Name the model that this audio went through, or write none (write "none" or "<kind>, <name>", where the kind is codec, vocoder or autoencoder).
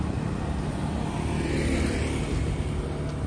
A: none